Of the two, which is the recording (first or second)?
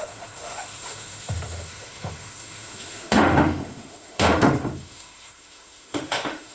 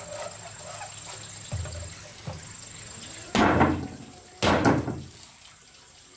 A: second